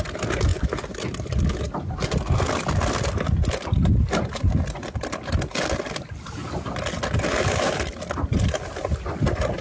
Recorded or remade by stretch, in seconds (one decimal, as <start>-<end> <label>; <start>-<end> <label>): 0.0-9.6 recorded